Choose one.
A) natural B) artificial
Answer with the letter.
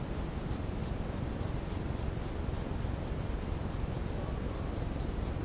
A